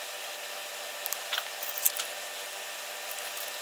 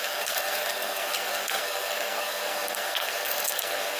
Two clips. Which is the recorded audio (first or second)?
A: first